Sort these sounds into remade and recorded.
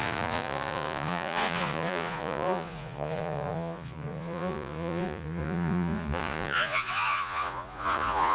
remade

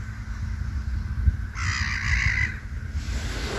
recorded